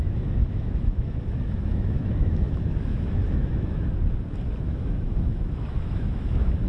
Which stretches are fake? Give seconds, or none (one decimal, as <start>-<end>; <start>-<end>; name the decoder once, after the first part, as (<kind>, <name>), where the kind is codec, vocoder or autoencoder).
0.0-3.9 (autoencoder, DAC-VAE); 4.6-6.7